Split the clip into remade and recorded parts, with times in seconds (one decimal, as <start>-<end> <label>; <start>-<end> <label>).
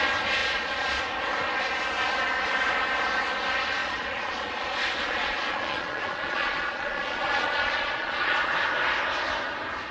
0.0-0.4 recorded; 0.4-1.0 remade; 1.0-3.8 recorded; 3.8-8.5 remade; 8.5-9.9 recorded